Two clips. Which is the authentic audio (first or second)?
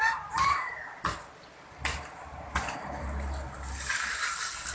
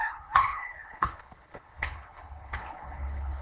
first